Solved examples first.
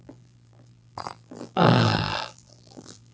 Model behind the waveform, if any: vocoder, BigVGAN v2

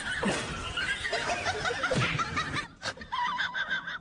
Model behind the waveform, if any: none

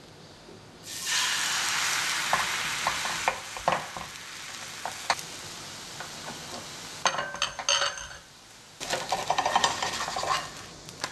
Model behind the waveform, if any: none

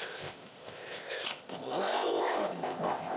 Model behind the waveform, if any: codec, ZipCodec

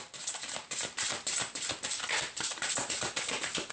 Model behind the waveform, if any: none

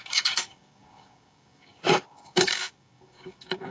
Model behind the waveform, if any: codec, DAC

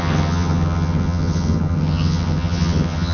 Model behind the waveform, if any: vocoder, HiFi-GAN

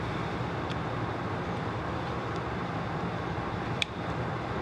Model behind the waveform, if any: vocoder, BigVGAN v2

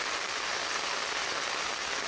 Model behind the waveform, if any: none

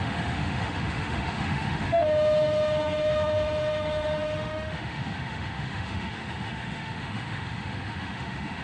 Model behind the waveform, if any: autoencoder, DAC-VAE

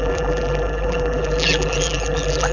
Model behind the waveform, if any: vocoder, BigVGAN v2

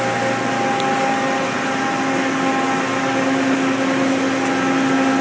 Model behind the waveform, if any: none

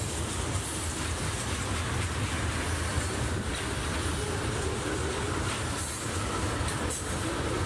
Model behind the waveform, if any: none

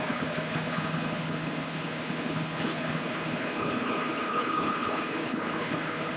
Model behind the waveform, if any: codec, HILCodec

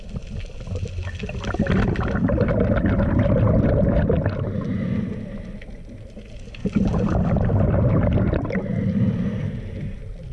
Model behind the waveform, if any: none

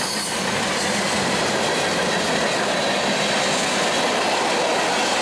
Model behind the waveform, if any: none